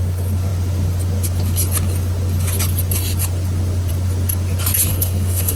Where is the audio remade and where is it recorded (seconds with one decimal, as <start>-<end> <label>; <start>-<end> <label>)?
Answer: 0.0-4.9 recorded; 4.9-5.6 remade